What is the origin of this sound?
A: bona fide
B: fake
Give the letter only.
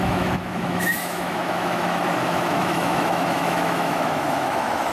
B